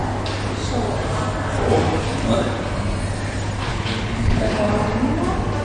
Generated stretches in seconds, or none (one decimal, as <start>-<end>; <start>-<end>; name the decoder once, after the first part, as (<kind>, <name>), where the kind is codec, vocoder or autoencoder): 3.7-4.7 (codec, HILCodec)